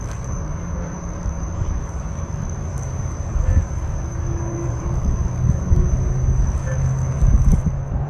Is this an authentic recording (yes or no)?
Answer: no